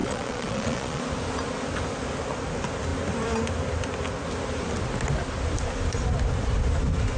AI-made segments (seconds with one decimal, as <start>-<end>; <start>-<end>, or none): 0.0-1.0